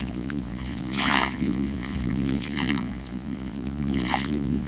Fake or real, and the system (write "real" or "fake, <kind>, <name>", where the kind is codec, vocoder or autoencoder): fake, vocoder, Vocos